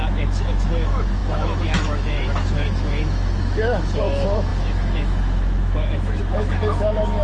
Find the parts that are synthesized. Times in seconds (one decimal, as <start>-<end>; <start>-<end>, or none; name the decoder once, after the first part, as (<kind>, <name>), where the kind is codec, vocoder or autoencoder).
0.0-7.2 (autoencoder, DAC-VAE)